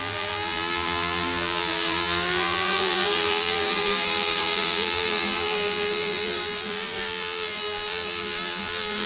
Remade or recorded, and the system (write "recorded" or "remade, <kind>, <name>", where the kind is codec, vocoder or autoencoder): remade, vocoder, BigVGAN v2